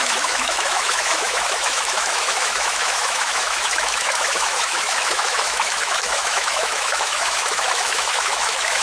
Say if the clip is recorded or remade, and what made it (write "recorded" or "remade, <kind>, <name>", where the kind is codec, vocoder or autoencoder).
remade, autoencoder, DAC-VAE